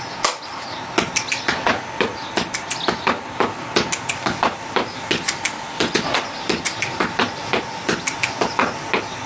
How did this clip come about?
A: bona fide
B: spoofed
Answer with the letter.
A